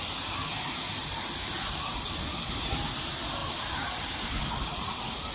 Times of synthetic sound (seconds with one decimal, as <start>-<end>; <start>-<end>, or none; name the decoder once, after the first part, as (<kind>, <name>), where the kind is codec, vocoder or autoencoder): none